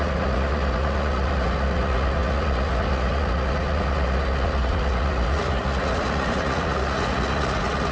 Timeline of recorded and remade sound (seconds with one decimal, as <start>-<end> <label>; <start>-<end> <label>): 0.0-7.9 remade

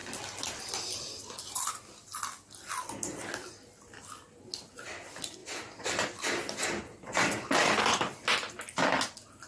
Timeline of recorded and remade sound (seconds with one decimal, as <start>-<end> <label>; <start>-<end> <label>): 0.0-1.6 remade; 1.6-5.4 recorded; 5.4-6.8 remade; 6.8-9.5 recorded

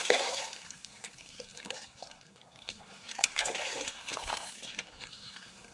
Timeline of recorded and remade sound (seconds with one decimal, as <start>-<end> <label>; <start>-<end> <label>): 0.0-5.7 remade